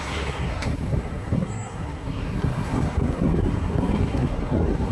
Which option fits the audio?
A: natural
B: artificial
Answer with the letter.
B